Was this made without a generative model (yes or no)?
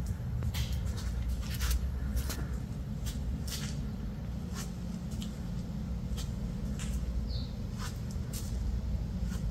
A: yes